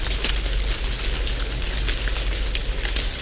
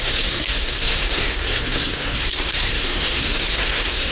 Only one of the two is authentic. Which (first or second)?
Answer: first